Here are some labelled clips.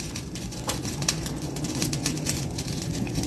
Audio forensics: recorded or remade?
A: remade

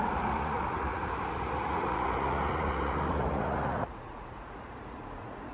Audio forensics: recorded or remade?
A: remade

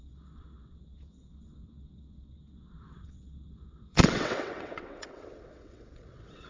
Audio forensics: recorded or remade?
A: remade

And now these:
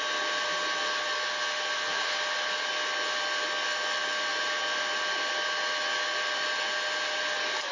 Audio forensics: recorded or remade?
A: recorded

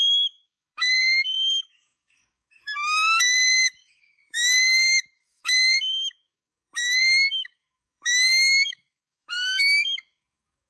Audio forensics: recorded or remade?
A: remade